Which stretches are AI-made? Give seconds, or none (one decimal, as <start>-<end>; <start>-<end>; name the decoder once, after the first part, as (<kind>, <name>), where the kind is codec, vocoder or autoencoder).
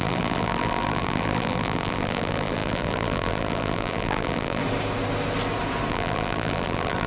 0.0-4.6 (vocoder, BigVGAN v2); 5.9-7.1